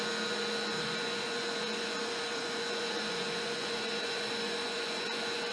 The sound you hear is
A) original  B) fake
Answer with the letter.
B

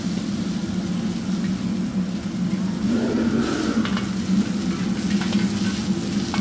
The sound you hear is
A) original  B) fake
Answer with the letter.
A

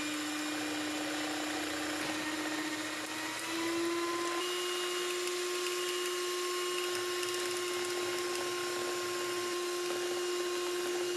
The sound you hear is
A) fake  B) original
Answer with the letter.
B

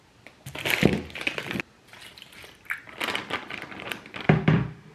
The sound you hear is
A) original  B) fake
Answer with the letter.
A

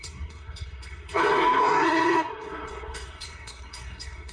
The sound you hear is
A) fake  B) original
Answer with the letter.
A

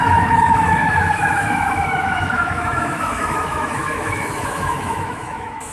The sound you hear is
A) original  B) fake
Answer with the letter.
B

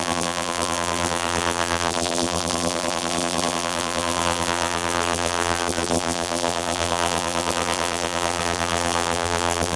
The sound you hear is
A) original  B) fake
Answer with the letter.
B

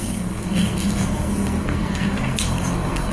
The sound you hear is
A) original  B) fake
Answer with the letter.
B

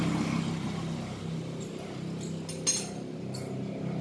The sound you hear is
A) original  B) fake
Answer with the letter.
A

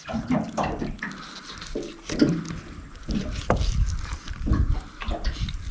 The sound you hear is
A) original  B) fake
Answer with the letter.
A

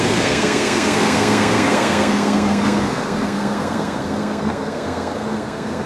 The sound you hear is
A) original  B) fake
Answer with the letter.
B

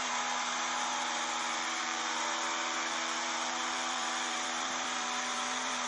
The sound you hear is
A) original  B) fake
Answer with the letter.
B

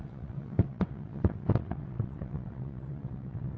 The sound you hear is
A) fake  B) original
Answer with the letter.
A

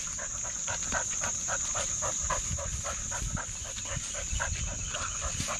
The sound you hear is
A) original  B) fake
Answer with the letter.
B